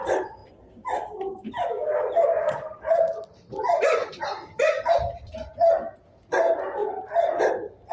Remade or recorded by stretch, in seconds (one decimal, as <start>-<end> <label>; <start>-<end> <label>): 0.0-0.4 remade; 0.4-4.1 recorded; 4.1-7.9 remade